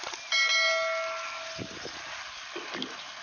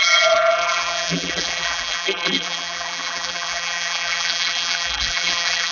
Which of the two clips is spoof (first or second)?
second